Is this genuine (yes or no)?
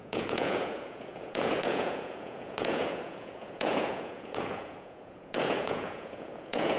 no